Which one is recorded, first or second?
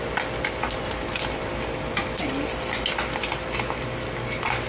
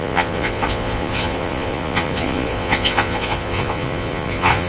first